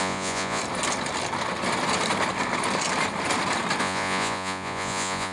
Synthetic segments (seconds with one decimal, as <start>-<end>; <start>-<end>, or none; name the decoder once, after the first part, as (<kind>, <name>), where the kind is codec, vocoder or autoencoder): 0.0-0.6 (vocoder, Vocos); 3.8-5.3